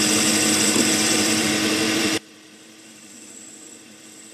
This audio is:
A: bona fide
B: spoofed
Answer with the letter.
B